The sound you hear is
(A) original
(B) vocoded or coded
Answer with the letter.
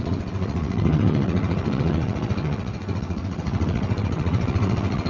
B